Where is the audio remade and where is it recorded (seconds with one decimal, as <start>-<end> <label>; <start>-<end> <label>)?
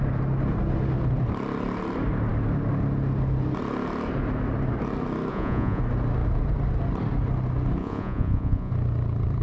0.0-5.3 recorded; 5.3-5.8 remade; 5.8-7.8 recorded; 7.8-8.7 remade; 8.7-9.4 recorded